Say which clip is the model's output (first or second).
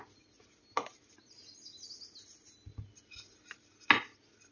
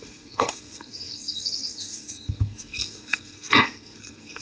second